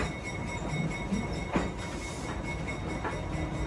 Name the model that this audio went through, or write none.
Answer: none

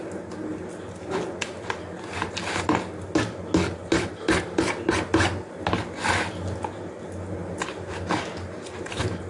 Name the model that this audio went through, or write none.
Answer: none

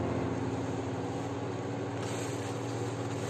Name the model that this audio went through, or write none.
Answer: none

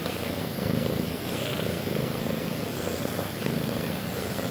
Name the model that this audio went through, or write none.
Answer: codec, SNAC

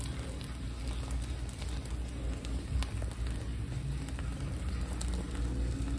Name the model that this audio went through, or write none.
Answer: none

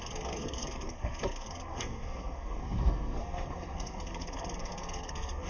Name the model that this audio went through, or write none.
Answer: codec, SNAC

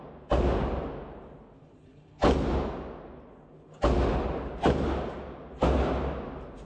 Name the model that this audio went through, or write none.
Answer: none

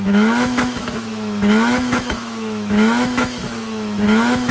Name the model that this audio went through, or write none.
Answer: autoencoder, DAC-VAE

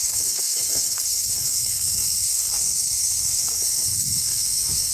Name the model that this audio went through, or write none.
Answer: codec, SNAC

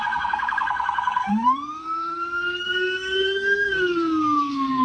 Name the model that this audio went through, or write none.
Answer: codec, SNAC